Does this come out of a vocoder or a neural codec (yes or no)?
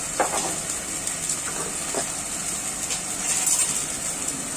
no